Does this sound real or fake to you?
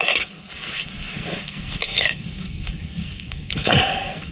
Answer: fake